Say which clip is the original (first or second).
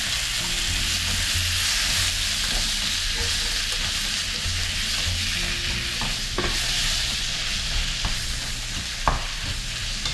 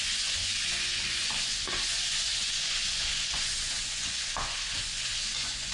first